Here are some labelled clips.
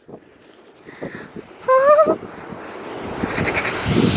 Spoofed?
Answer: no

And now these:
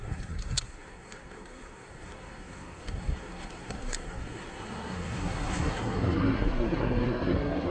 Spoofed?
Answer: yes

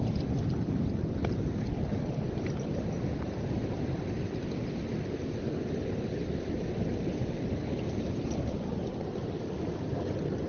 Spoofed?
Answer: no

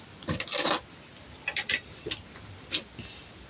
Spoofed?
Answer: no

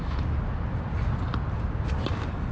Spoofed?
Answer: no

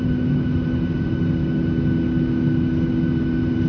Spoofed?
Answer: no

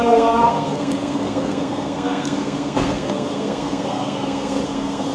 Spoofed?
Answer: yes